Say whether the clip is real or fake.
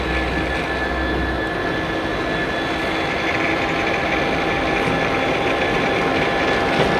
real